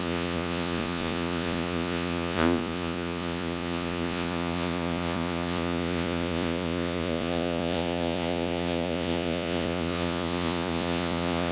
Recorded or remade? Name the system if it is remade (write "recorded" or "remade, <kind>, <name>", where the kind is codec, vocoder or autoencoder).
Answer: remade, vocoder, Vocos